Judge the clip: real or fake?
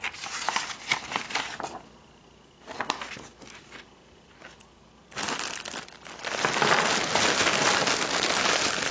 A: fake